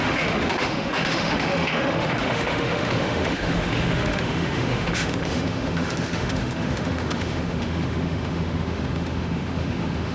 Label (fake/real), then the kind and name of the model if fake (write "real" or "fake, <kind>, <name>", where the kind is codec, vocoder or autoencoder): fake, autoencoder, DAC-VAE